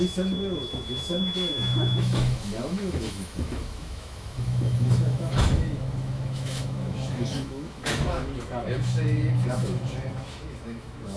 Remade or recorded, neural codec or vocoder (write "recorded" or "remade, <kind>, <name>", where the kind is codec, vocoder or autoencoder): remade, autoencoder, DAC-VAE